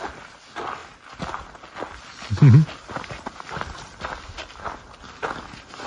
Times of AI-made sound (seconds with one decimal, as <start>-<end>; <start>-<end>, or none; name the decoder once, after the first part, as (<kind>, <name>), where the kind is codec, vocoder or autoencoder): none